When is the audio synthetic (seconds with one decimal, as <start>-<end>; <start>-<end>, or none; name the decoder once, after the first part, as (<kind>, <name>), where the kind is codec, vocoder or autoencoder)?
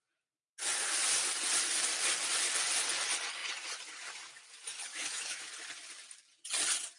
4.9-5.5 (autoencoder, DAC-VAE)